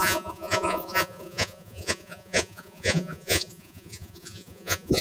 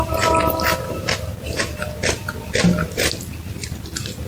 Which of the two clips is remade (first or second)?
first